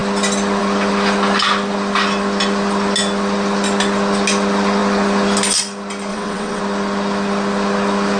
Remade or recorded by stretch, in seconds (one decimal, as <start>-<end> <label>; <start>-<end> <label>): 0.0-6.1 recorded; 6.1-6.6 remade; 6.6-8.2 recorded